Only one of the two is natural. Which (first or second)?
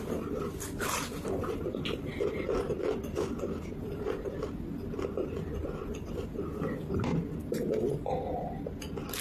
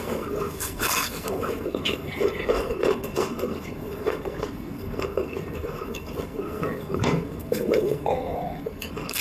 first